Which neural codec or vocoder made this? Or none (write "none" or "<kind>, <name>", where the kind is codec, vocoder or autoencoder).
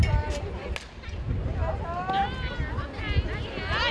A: none